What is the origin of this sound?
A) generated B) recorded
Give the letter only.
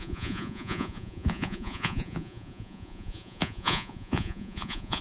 A